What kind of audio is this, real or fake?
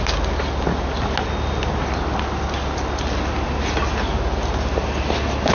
real